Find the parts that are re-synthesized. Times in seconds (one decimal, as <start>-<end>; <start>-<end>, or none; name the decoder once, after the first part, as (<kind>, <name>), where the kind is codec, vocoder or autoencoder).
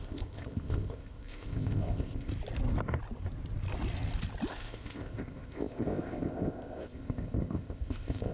0.0-2.3 (codec, ZipCodec); 4.5-8.3